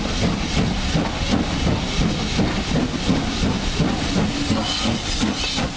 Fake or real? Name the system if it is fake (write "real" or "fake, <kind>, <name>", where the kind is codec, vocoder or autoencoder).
real